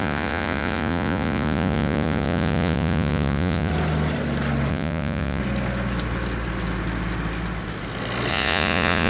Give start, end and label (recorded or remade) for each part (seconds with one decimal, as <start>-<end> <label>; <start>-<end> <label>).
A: 0.0-3.7 remade; 3.7-4.7 recorded; 4.7-5.4 remade; 5.4-8.3 recorded; 8.3-9.1 remade